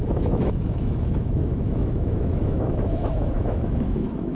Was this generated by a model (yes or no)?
yes